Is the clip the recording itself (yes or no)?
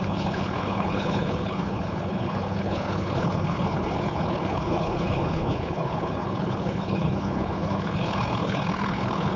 no